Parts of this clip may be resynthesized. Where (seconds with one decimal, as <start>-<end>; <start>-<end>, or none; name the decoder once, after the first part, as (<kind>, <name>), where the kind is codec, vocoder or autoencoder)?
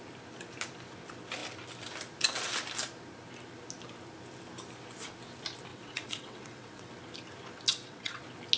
5.7-6.9 (vocoder, WaveNeXt); 7.7-8.2